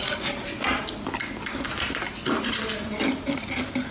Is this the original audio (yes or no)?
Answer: yes